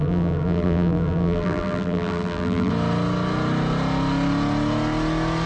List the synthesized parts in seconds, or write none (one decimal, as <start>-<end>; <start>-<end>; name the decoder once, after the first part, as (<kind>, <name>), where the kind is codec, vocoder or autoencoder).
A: 0.0-2.7 (vocoder, BigVGAN v2)